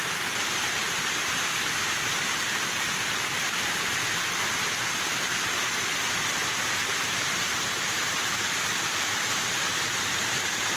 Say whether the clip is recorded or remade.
remade